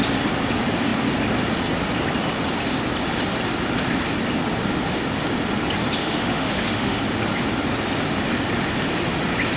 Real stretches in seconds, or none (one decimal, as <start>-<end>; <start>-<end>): 0.0-6.0; 7.0-9.6